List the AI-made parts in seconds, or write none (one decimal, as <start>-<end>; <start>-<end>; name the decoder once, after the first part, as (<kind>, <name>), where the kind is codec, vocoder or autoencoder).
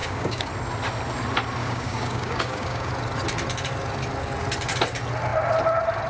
0.0-0.5 (codec, DAC); 1.6-2.9